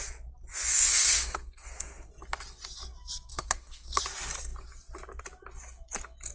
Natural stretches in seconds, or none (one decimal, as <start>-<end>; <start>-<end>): 0.0-0.5; 2.1-3.3; 4.0-6.3